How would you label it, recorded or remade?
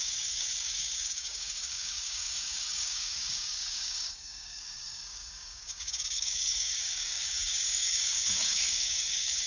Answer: remade